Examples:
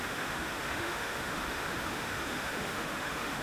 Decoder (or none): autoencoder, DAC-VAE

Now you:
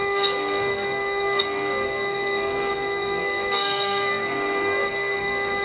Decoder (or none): codec, SNAC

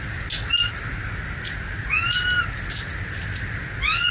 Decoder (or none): none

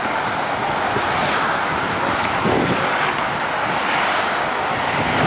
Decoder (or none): none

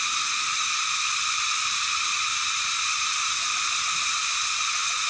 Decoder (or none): none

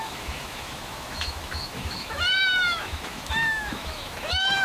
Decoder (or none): autoencoder, DAC-VAE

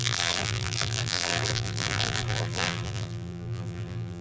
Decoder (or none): vocoder, BigVGAN v2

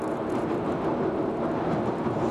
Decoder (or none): none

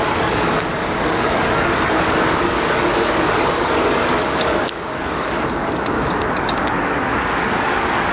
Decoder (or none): codec, DAC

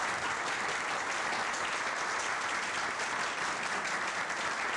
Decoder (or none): none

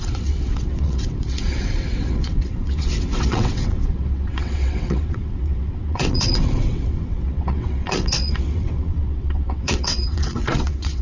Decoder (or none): vocoder, WaveNeXt